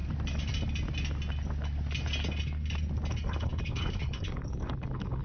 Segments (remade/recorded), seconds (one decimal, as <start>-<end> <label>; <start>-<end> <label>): 0.0-3.1 recorded; 3.1-5.2 remade